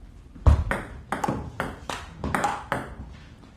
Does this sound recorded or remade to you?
recorded